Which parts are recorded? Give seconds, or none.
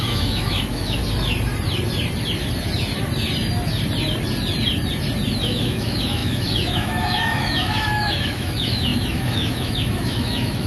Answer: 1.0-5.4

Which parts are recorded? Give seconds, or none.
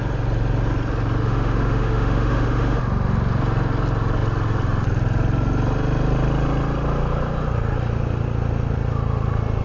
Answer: 0.0-1.2; 2.8-9.6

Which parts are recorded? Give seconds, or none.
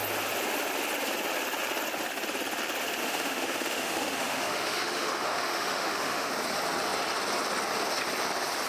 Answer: 0.0-3.0; 6.3-8.7